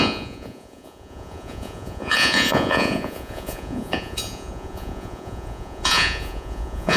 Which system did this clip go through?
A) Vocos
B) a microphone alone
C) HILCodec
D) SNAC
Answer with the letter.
A